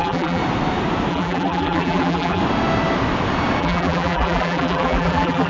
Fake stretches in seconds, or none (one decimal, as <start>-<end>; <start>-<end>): 0.0-0.4; 1.1-2.4; 3.6-5.5